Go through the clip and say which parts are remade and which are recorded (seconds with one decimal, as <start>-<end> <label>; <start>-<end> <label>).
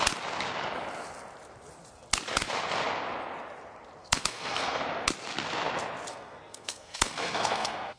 0.0-4.0 recorded; 4.0-4.8 remade; 4.8-6.1 recorded; 6.1-8.0 remade